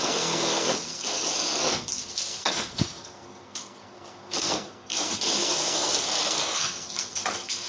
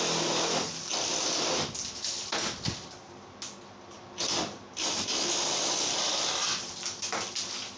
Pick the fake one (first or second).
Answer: first